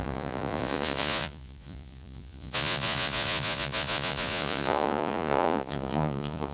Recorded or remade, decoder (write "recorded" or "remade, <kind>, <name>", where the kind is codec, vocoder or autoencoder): remade, vocoder, Vocos